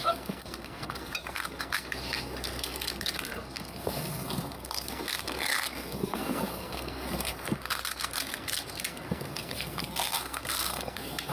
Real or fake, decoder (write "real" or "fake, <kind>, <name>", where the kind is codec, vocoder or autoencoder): fake, codec, SNAC